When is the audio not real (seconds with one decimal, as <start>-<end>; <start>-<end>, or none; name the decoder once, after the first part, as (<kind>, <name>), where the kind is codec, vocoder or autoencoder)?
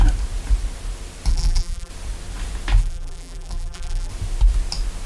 1.3-1.9 (vocoder, BigVGAN v2); 2.8-4.1